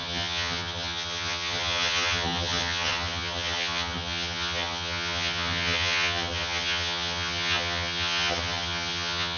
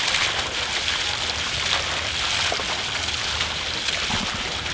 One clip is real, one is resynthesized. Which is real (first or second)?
second